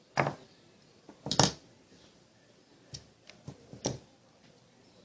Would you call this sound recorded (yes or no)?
yes